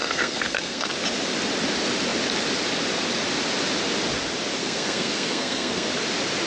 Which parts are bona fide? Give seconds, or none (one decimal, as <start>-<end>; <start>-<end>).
0.9-4.6; 5.9-6.5